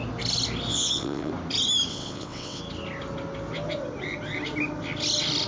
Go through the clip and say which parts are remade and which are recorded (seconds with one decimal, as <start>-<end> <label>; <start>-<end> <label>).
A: 0.0-0.7 recorded; 0.7-1.3 remade; 1.3-1.9 recorded; 1.9-2.6 remade; 2.6-5.5 recorded